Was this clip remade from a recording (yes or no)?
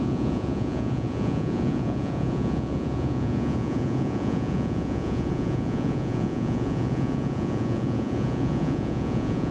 yes